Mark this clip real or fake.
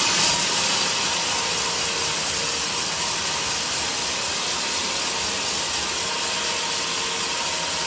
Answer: real